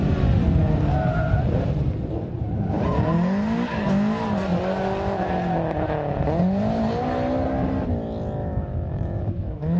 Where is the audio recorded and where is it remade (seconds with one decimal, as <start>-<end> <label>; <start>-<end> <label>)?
0.0-8.4 recorded; 8.4-9.8 remade